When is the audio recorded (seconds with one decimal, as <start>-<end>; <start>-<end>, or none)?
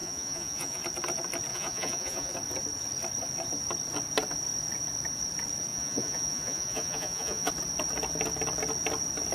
0.8-1.5; 2.3-5.7; 7.5-9.3